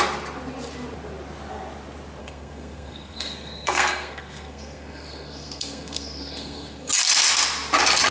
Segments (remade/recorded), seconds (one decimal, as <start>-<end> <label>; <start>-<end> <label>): 0.0-2.2 recorded; 2.2-6.9 remade; 6.9-8.1 recorded